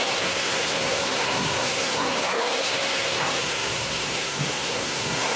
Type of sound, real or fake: fake